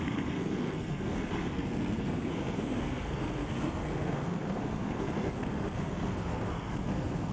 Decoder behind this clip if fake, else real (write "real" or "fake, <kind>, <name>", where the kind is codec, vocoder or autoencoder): fake, codec, SNAC